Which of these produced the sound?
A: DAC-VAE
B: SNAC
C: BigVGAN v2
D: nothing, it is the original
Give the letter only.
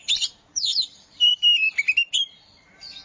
C